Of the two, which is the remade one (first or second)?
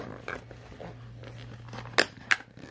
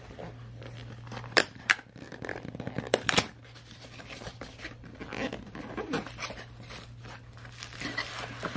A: second